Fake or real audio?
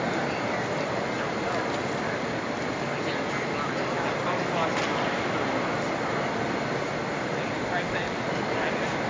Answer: real